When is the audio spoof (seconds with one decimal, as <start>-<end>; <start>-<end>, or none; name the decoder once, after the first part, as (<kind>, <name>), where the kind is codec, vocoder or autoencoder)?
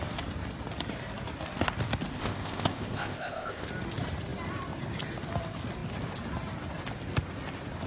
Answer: 2.1-3.7 (codec, ZipCodec)